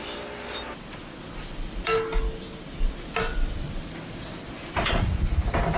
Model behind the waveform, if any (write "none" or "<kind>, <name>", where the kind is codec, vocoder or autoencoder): none